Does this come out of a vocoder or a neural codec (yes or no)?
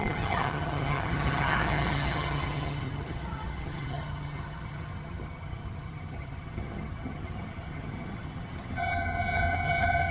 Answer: yes